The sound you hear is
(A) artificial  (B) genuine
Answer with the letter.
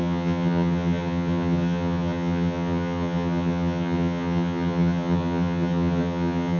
A